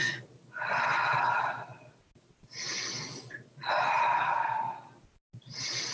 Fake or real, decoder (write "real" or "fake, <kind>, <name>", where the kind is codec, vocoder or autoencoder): real